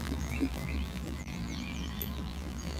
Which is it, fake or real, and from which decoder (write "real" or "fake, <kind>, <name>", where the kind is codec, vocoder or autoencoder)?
fake, vocoder, BigVGAN v2